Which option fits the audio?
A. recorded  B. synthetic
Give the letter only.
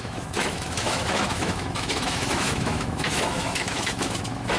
B